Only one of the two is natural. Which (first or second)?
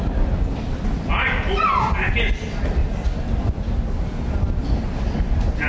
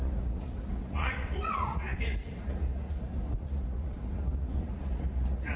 first